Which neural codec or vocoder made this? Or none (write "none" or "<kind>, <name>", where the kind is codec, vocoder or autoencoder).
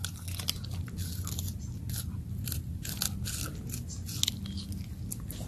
none